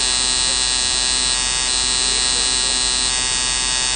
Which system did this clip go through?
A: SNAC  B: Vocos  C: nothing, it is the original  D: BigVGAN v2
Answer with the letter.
C